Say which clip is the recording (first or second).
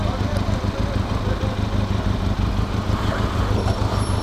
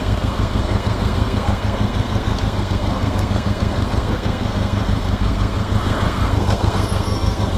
first